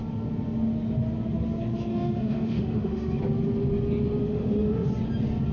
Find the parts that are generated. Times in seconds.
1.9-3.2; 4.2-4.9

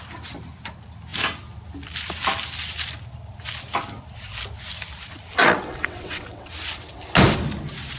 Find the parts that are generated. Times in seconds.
5.4-6.5

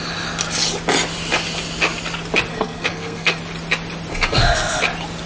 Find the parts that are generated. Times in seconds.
2.5-3.4; 4.1-4.8

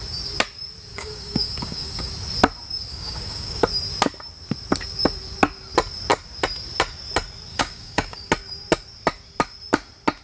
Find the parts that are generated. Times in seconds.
0.9-2.1; 2.9-3.6; 7.5-8.3

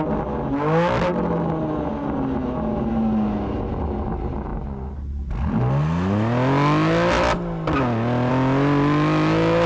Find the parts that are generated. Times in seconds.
none